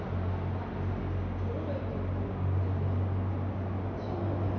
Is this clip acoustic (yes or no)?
yes